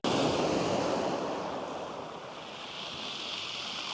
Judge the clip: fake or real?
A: real